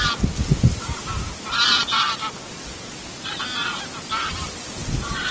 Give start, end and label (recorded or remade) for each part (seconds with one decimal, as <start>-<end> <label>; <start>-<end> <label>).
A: 0.0-5.3 recorded